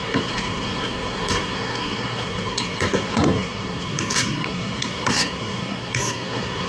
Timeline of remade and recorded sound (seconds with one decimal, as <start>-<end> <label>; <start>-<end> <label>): 0.0-6.7 remade